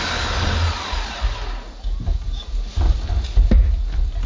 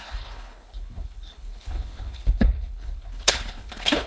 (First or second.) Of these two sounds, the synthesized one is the second